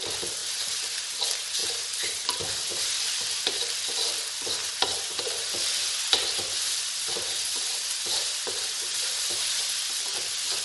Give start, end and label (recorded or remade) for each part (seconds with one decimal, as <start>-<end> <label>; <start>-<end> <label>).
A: 0.0-1.6 recorded; 1.6-2.9 remade; 2.9-4.6 recorded; 4.6-5.2 remade; 5.2-7.5 recorded; 7.5-9.6 remade; 9.6-10.6 recorded